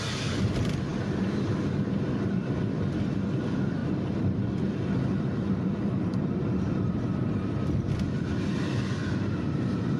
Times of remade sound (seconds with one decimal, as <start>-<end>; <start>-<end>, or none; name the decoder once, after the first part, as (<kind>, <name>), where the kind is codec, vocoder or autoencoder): 0.0-10.0 (vocoder, BigVGAN v2)